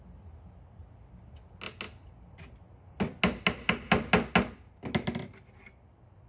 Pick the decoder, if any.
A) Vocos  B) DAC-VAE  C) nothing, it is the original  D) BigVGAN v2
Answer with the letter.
C